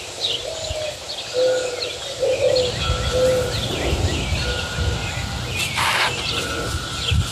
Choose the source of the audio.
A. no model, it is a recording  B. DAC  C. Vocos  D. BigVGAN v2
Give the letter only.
A